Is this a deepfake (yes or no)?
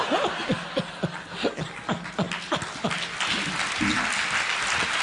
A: no